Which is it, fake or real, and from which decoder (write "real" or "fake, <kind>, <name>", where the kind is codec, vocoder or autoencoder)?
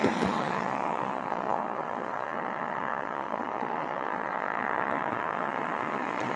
fake, vocoder, Vocos